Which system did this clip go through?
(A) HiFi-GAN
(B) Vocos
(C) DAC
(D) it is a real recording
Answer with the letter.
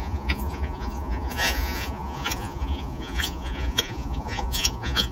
B